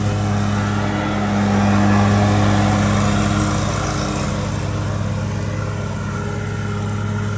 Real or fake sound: real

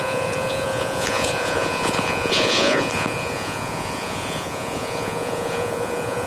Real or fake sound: fake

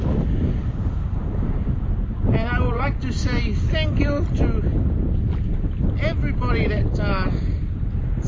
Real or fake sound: real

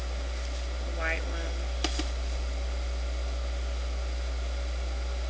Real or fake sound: real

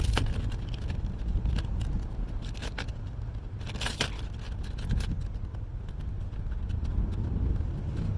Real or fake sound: real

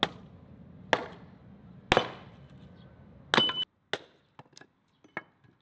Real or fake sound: real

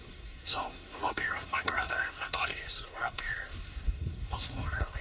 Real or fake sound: fake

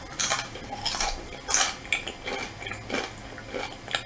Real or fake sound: real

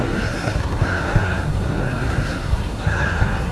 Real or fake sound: fake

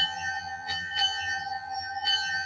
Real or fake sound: fake